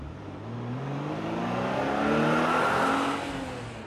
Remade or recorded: recorded